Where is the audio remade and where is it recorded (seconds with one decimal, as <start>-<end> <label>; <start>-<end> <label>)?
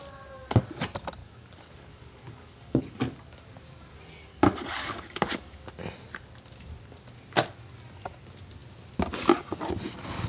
0.0-1.2 recorded; 1.2-3.0 remade; 3.0-4.3 recorded; 4.3-5.7 remade; 5.7-10.3 recorded